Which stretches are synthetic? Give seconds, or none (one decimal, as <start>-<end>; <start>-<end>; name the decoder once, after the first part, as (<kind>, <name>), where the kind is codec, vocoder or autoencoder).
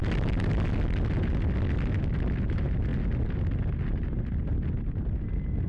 none